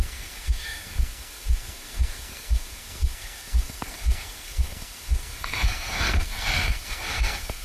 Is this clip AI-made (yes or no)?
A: yes